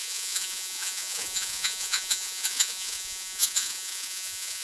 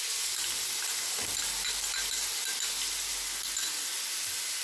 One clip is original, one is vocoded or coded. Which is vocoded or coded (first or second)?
first